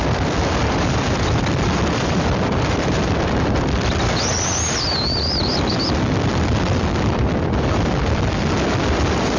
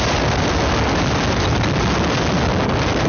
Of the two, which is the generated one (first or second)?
first